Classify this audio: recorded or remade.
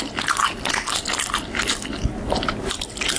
recorded